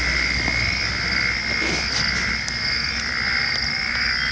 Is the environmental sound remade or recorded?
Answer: recorded